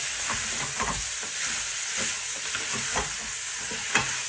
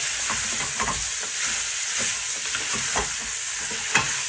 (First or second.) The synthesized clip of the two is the second